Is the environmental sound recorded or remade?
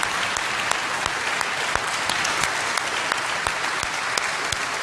recorded